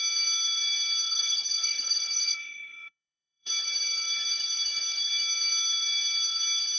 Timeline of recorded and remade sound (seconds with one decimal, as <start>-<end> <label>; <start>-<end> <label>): 0.0-1.1 recorded; 1.1-3.5 remade; 3.5-6.8 recorded